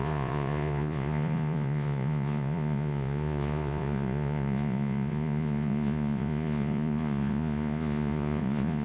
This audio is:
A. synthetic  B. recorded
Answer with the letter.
A